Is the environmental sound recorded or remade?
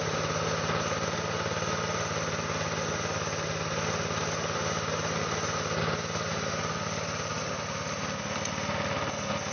recorded